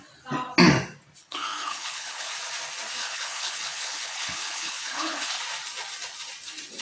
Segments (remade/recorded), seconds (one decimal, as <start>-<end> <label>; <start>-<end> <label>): 0.0-1.2 recorded; 1.2-2.3 remade; 2.3-3.0 recorded; 3.0-5.4 remade; 5.4-6.8 recorded